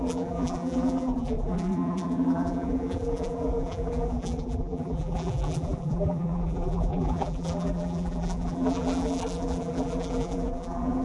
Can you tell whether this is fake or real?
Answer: fake